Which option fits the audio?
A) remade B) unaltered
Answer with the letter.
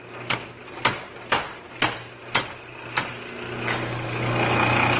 B